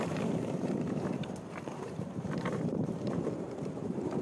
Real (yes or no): no